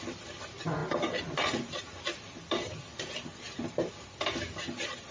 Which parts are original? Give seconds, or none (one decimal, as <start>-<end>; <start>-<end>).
0.0-0.8; 3.9-5.1